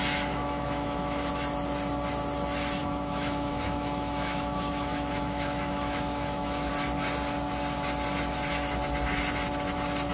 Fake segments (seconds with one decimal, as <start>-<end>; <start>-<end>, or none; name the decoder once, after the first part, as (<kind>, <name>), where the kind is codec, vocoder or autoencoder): 0.4-1.3 (autoencoder, DAC-VAE); 2.8-6.7